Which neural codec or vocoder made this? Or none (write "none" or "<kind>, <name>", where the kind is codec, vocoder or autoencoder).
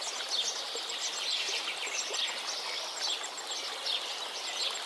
none